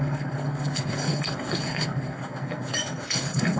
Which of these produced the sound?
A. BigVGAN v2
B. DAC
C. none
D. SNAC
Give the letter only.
D